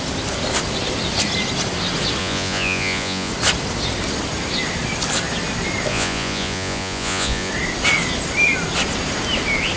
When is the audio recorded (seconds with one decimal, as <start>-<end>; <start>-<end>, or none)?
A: 0.0-2.2; 3.3-5.9; 7.5-9.8